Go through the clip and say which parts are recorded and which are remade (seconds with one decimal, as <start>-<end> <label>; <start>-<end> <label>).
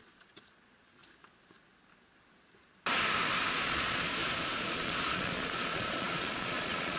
0.0-1.0 remade; 1.0-3.5 recorded; 3.5-4.2 remade; 4.2-4.7 recorded; 4.7-7.0 remade